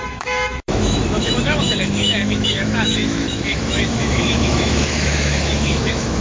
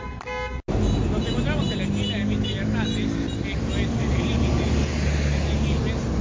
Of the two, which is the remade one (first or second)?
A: first